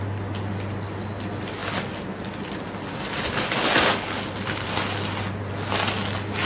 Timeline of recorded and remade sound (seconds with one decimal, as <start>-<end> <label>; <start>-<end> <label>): 0.0-6.5 recorded